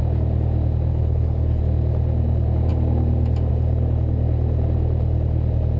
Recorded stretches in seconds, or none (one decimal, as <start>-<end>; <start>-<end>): 0.0-0.9; 1.6-5.8